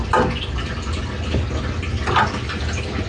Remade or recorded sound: recorded